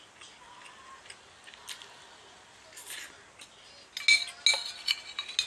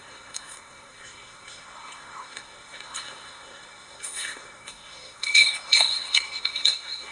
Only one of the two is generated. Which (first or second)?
second